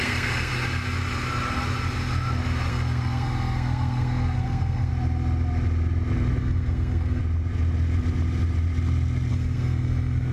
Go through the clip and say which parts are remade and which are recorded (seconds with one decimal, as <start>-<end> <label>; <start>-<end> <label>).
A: 0.0-0.5 remade; 0.5-2.7 recorded; 2.7-4.9 remade; 4.9-6.4 recorded; 6.4-7.2 remade; 7.2-9.3 recorded; 9.3-10.3 remade